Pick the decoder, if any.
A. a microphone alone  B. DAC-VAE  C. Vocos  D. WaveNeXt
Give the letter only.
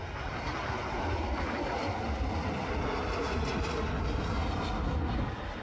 A